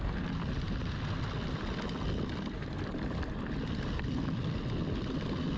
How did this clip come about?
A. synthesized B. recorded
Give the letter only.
A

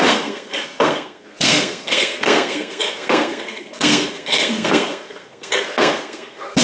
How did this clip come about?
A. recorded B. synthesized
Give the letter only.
B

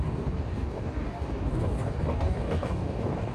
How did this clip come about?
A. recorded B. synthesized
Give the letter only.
B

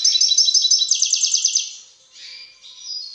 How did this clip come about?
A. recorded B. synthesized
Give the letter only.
A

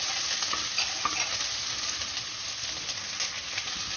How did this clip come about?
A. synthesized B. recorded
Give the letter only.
B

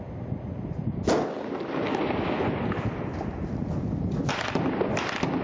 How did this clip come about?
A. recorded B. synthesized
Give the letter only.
A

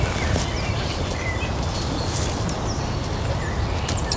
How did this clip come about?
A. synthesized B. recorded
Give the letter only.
B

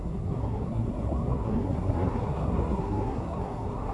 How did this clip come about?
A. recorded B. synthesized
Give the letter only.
B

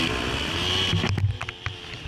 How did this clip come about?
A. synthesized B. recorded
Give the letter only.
B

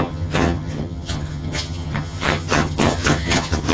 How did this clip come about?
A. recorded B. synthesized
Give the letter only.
B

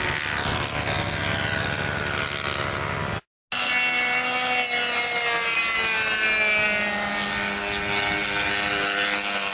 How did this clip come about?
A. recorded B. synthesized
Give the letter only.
A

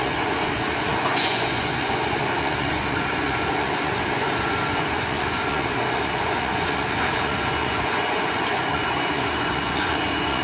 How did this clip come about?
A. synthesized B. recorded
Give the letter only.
A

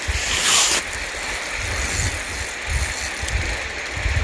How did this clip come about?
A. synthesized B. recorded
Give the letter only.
B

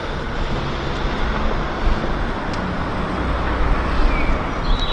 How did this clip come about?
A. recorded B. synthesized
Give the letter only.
A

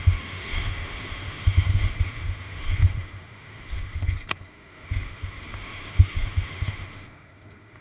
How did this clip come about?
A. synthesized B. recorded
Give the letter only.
A